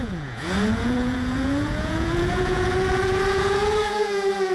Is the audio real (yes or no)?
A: no